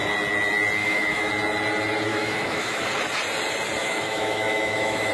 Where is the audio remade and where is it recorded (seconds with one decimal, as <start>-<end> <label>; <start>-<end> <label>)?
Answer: 0.0-0.8 recorded; 0.8-1.3 remade; 1.3-2.1 recorded; 2.1-2.9 remade; 2.9-3.8 recorded; 3.8-5.1 remade